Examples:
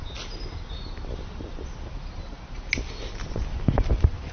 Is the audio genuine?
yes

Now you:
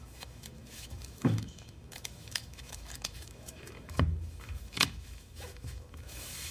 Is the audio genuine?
no